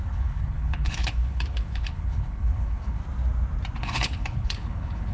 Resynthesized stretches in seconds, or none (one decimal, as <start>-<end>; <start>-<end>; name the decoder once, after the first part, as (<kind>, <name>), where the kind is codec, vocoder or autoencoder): 0.0-3.0 (codec, HILCodec); 3.8-5.1